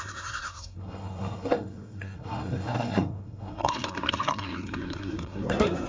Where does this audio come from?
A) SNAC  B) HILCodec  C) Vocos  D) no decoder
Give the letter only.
A